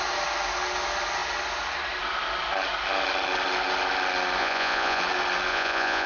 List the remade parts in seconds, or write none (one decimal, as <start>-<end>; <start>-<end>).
4.4-5.0; 5.5-6.1